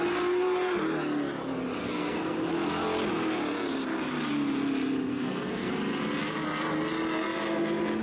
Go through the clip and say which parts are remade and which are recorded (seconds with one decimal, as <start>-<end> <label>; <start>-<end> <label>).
0.0-1.8 recorded; 1.8-2.5 remade; 2.5-5.1 recorded; 5.1-5.7 remade; 5.7-8.0 recorded